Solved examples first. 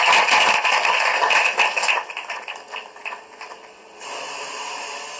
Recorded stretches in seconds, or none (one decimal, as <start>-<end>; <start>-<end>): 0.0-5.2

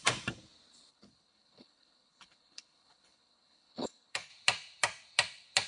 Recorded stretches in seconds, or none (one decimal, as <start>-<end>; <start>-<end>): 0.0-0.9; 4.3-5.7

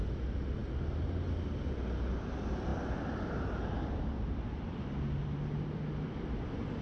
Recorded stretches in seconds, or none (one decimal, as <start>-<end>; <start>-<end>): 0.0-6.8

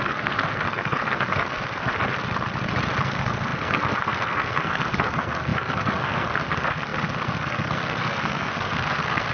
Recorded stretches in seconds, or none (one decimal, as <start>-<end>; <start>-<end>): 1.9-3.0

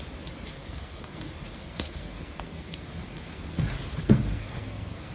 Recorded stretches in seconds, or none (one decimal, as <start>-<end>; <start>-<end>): 0.0-0.5; 3.6-4.0

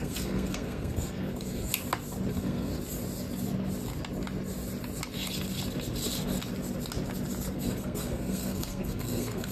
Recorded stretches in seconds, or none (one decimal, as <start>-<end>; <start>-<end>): 1.7-2.3; 2.7-7.5